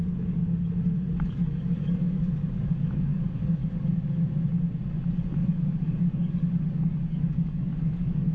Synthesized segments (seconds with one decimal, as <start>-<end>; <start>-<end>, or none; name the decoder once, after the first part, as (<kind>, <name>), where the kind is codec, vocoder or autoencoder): 0.0-0.4 (codec, DAC); 1.2-3.6; 5.2-8.3